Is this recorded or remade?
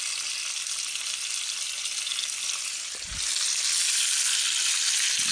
recorded